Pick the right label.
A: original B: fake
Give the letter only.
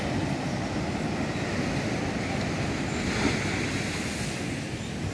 A